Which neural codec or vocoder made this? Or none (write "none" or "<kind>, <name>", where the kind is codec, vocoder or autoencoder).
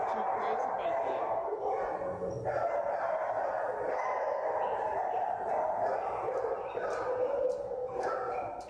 none